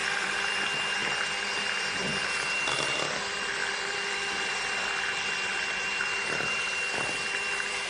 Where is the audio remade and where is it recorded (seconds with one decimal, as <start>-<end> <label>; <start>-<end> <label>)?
0.0-0.5 remade; 0.5-1.0 recorded; 1.0-2.3 remade; 2.3-3.6 recorded; 3.6-7.9 remade